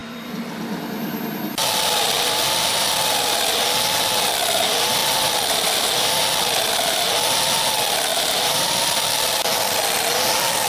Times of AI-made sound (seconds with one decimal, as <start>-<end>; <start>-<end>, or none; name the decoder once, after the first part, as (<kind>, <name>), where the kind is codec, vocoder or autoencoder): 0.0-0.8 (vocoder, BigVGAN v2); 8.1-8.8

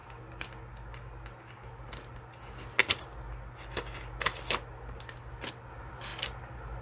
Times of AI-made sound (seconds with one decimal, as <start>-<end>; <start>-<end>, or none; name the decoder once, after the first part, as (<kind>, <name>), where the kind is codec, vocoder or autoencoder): none

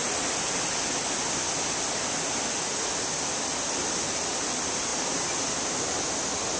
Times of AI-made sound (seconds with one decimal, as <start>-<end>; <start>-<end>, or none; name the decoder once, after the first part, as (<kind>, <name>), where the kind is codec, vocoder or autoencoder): none

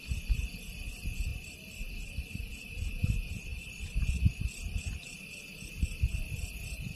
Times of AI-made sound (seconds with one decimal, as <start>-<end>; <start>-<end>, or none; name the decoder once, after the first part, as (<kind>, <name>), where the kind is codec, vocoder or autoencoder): 1.3-2.5 (vocoder, BigVGAN v2)

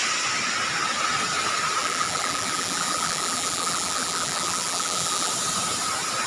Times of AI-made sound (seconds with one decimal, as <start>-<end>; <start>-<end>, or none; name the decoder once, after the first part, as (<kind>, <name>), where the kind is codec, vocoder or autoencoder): 1.8-5.3 (vocoder, BigVGAN v2)

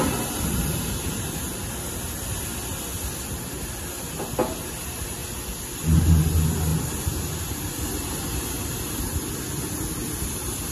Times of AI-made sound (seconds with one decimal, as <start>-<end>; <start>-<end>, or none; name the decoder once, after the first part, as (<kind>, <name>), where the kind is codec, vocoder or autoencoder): none